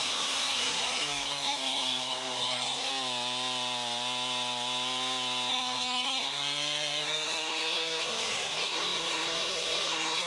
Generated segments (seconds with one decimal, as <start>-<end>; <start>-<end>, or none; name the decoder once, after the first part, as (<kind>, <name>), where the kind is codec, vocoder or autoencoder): 0.0-2.9 (codec, SNAC); 5.5-10.3